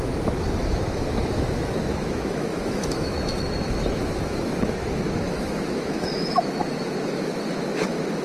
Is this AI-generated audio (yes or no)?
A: yes